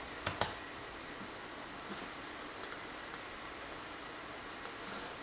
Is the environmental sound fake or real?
real